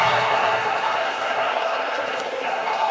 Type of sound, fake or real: fake